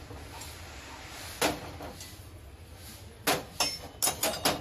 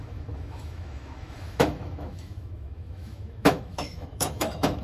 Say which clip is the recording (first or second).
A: first